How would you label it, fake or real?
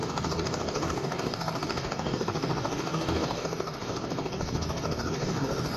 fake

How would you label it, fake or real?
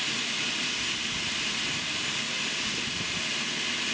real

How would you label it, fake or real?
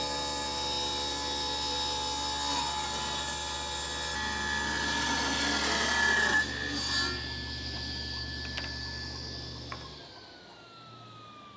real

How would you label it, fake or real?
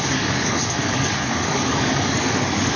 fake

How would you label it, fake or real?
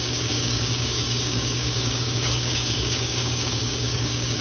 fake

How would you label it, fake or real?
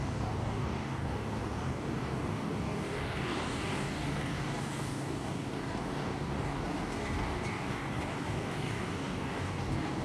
fake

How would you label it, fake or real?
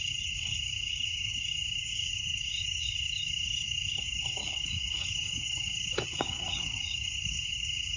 fake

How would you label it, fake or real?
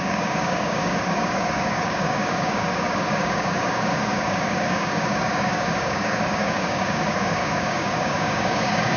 fake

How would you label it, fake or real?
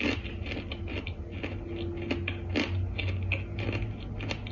real